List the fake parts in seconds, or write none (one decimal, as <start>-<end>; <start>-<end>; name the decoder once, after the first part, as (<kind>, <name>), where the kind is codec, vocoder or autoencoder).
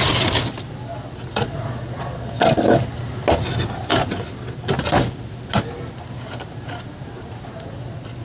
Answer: 1.3-2.6 (vocoder, Vocos)